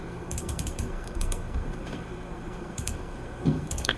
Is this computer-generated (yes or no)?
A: yes